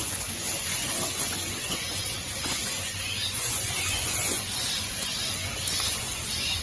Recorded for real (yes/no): no